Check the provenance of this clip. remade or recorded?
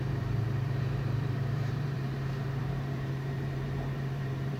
remade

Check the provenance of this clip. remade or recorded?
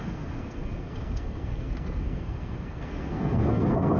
remade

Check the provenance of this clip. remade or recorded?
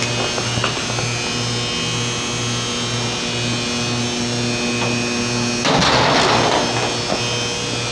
recorded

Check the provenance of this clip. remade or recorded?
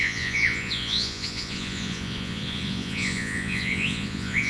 remade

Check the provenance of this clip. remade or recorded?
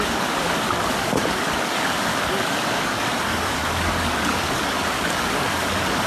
remade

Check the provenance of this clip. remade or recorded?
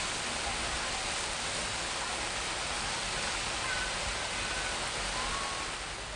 recorded